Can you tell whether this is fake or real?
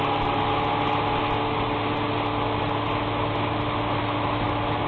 real